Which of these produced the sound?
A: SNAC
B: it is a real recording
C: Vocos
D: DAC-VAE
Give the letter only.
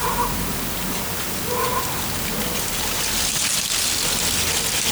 B